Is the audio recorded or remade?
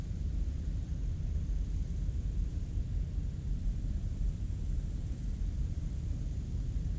remade